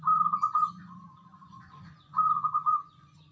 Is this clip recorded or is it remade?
remade